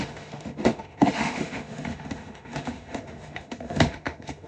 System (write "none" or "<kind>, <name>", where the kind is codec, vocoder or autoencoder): autoencoder, DAC-VAE